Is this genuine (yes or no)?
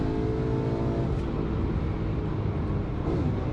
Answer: yes